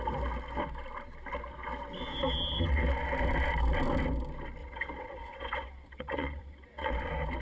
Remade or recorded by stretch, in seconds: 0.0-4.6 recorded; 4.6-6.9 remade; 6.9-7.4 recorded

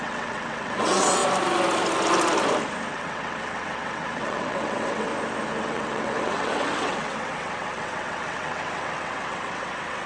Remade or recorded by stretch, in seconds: 0.0-1.2 remade; 1.2-2.9 recorded; 2.9-5.1 remade; 5.1-5.6 recorded; 5.6-10.1 remade

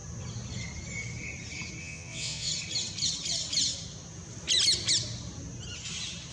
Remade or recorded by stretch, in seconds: 0.0-1.8 recorded; 1.8-2.5 remade; 2.5-6.3 recorded